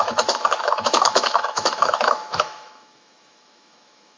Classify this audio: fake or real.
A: fake